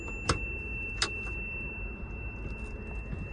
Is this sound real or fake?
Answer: real